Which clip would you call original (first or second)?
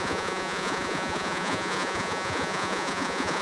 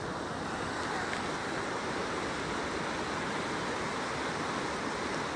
second